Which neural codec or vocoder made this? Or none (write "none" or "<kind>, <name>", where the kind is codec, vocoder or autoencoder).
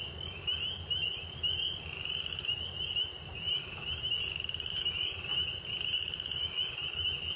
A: none